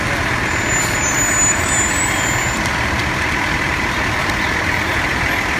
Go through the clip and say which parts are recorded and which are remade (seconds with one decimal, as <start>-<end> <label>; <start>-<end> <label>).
0.0-3.0 recorded; 3.0-5.1 remade; 5.1-5.6 recorded

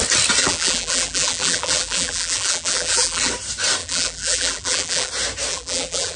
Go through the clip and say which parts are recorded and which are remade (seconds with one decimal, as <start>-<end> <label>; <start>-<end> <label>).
0.0-0.4 recorded; 0.4-3.3 remade; 3.3-3.8 recorded; 3.8-5.1 remade; 5.1-5.5 recorded; 5.5-6.2 remade

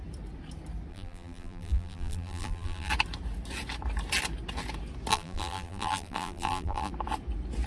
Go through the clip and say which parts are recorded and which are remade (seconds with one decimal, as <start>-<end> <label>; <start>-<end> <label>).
0.0-0.9 recorded; 0.9-2.9 remade; 2.9-5.1 recorded; 5.1-6.9 remade; 6.9-7.7 recorded

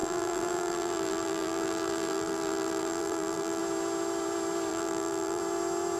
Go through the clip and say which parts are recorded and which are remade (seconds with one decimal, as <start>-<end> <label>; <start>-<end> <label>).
0.0-3.6 remade; 3.6-4.7 recorded; 4.7-5.4 remade; 5.4-6.0 recorded